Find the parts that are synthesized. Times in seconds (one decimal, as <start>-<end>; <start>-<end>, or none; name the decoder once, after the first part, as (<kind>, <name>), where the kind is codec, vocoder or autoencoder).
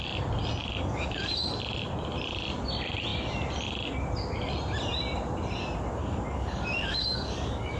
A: 0.6-1.5 (codec, DAC); 6.0-7.8